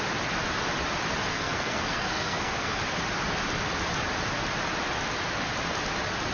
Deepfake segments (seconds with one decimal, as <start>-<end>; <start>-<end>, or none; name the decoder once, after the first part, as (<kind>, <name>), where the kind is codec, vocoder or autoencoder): 1.3-2.8 (codec, SNAC)